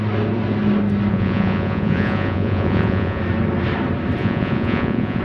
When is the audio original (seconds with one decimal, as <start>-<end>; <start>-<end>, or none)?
0.0-1.1; 3.2-4.2